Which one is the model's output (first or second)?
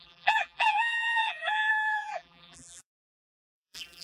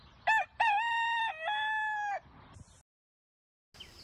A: first